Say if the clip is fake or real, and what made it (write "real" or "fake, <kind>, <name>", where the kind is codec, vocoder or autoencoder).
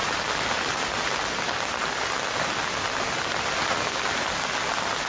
real